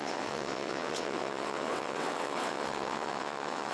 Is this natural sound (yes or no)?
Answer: no